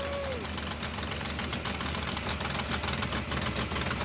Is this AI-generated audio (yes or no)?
no